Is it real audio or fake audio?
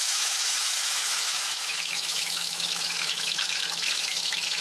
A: fake